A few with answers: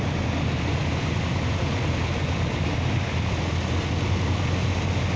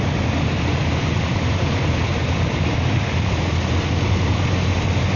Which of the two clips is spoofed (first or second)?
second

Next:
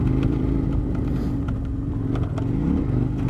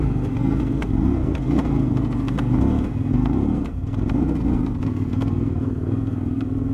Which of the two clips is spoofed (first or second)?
second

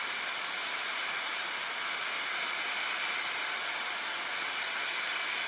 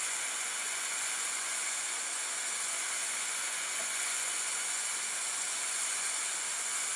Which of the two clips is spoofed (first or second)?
second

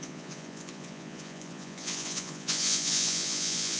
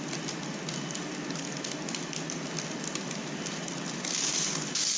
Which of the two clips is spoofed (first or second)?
first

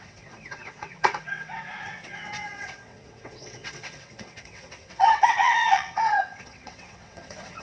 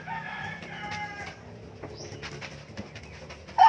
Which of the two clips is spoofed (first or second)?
first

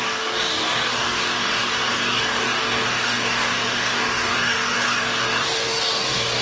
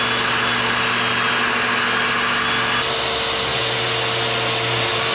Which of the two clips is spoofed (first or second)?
first